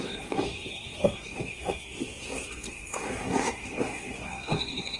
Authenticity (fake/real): fake